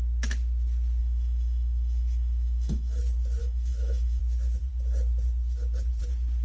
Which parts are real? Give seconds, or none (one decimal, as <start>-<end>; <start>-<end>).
0.0-1.0; 3.0-3.4; 4.2-6.4